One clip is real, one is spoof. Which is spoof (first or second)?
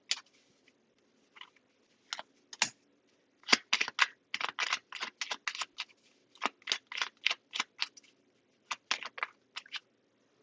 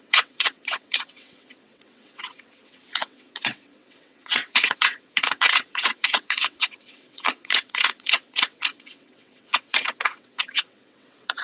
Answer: second